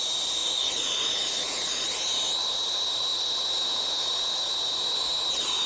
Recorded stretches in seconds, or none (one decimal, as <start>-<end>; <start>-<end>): 0.0-0.4; 1.8-5.7